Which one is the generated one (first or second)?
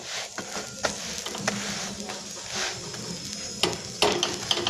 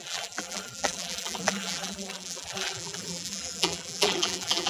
second